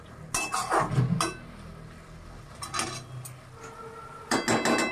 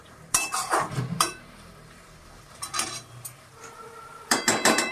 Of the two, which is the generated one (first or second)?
second